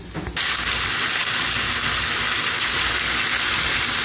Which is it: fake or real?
real